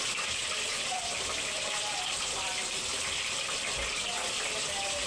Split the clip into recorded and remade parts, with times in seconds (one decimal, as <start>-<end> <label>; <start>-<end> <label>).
0.0-0.7 recorded; 0.7-2.9 remade; 2.9-5.1 recorded